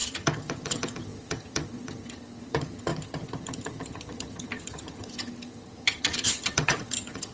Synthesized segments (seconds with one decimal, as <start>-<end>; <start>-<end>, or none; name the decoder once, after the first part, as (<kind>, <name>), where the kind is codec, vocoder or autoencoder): 0.0-7.3 (vocoder, HiFi-GAN)